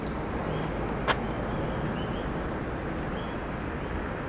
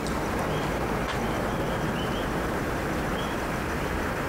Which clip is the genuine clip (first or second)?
first